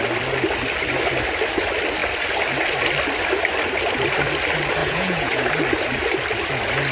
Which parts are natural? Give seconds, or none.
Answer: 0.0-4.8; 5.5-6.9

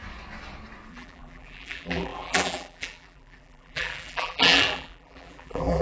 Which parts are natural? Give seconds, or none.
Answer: 0.0-0.9

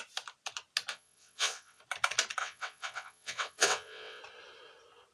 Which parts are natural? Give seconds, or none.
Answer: 0.0-0.9; 1.8-2.4; 4.2-5.1

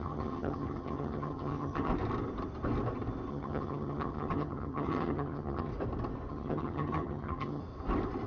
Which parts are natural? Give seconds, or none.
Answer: 1.9-3.3; 5.7-6.3; 7.6-8.3

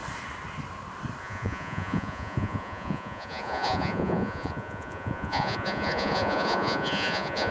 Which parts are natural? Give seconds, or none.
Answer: 0.0-1.2